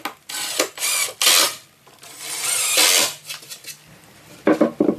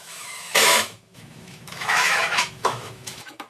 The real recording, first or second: first